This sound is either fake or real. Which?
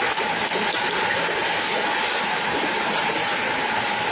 real